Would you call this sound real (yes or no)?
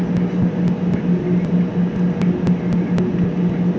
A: yes